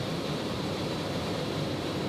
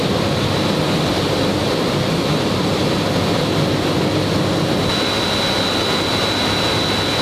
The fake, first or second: first